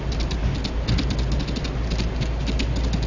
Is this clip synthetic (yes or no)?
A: no